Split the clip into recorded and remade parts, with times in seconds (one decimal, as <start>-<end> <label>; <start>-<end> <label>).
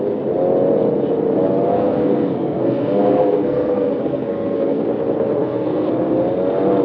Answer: 0.0-1.7 recorded; 1.7-4.8 remade; 4.8-5.4 recorded; 5.4-5.9 remade; 5.9-6.8 recorded